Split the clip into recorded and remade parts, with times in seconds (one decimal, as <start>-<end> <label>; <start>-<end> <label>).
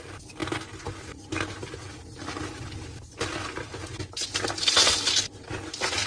0.0-6.1 recorded